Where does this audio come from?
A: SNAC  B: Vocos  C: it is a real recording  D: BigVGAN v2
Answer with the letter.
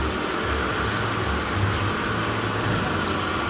C